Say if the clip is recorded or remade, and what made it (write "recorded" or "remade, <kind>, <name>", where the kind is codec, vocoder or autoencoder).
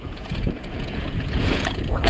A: remade, vocoder, Vocos